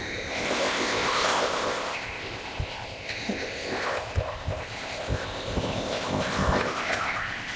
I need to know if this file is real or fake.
fake